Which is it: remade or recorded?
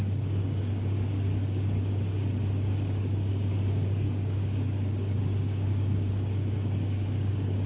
remade